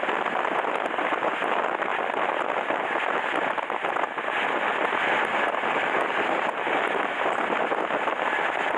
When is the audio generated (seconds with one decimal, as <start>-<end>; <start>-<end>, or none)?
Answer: none